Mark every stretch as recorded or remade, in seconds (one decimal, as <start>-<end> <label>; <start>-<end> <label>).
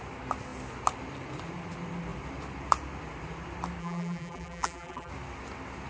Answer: 0.0-3.8 recorded; 3.8-5.1 remade; 5.1-5.9 recorded